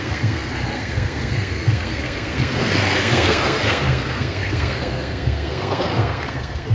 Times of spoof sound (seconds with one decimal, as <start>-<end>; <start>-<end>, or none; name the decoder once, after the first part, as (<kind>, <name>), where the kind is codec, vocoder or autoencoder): 0.0-6.7 (codec, SNAC)